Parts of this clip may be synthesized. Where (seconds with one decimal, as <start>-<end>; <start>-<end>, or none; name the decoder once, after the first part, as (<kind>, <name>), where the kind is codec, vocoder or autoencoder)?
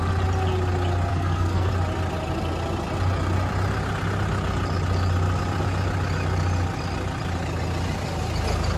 1.1-1.7 (codec, SNAC)